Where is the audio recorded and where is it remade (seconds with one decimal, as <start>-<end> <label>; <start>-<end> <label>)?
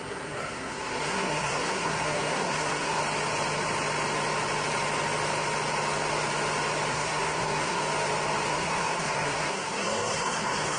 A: 0.0-3.0 remade; 3.0-6.9 recorded; 6.9-7.8 remade; 7.8-8.5 recorded; 8.5-10.8 remade